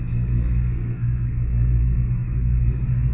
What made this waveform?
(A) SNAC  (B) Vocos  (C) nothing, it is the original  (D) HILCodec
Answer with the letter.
A